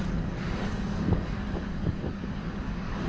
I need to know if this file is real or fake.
fake